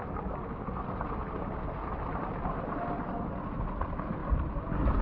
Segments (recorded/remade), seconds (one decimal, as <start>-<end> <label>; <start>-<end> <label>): 0.0-0.5 remade; 0.5-1.8 recorded; 1.8-2.6 remade; 2.6-5.0 recorded